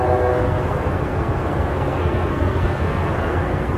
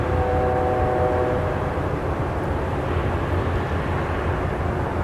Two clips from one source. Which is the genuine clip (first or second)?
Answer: second